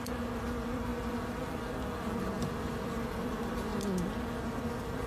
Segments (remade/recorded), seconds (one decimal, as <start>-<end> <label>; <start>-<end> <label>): 0.0-0.9 remade; 0.9-2.7 recorded; 2.7-3.7 remade; 3.7-4.5 recorded; 4.5-5.1 remade